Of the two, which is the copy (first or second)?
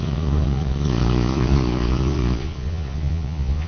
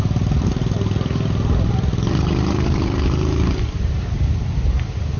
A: first